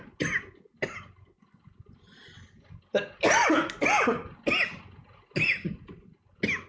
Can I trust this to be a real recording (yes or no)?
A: yes